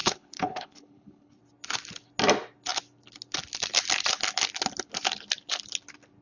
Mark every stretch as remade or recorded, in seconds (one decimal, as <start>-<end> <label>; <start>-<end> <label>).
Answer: 0.0-1.4 remade; 1.4-6.2 recorded